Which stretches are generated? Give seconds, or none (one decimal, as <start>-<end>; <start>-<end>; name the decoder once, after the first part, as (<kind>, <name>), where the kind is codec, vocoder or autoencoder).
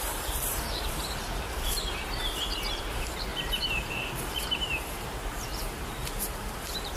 0.0-7.0 (vocoder, BigVGAN v2)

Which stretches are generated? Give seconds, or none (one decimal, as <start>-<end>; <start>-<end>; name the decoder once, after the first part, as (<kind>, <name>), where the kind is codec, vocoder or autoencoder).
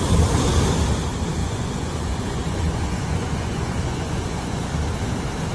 1.4-4.7 (vocoder, Vocos)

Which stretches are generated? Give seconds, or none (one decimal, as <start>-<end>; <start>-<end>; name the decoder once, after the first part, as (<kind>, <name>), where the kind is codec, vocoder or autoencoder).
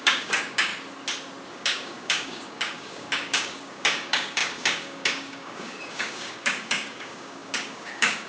0.0-0.7 (codec, DAC); 1.5-8.3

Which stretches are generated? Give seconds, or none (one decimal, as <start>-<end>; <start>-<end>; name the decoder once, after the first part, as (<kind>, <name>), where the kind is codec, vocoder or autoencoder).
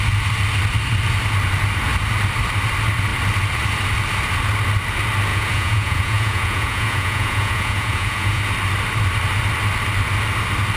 5.3-8.4 (vocoder, Vocos)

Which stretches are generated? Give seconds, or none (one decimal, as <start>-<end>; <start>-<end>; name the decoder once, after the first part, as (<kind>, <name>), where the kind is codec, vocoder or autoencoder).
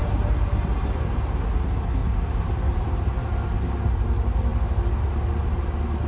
0.0-1.4 (vocoder, BigVGAN v2); 2.0-3.3